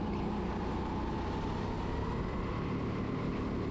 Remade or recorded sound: recorded